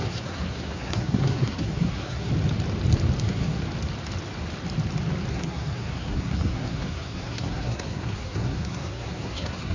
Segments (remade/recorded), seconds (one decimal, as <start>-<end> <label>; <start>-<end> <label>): 0.0-2.3 remade; 2.3-3.2 recorded; 3.2-3.6 remade; 3.6-5.3 recorded; 5.3-9.7 remade